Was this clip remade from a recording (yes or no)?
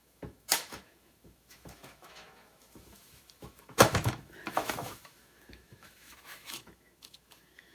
yes